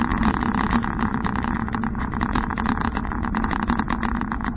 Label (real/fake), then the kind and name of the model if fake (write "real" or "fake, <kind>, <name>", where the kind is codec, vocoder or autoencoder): fake, vocoder, Vocos